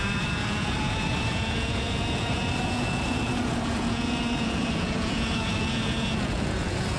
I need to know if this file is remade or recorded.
remade